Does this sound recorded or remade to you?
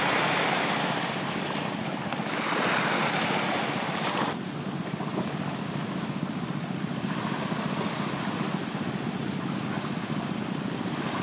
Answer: recorded